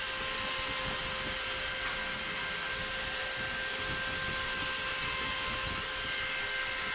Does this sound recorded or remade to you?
recorded